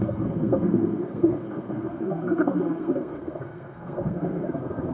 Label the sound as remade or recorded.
remade